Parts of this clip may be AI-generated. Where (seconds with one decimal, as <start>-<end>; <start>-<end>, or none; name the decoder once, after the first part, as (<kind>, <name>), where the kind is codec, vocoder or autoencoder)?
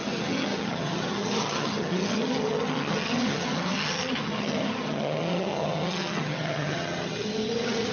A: 0.0-7.9 (vocoder, HiFi-GAN)